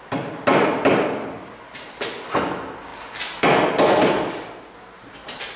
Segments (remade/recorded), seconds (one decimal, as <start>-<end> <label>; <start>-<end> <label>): 0.0-5.6 recorded